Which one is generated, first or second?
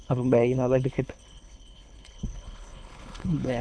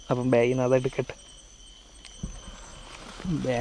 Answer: first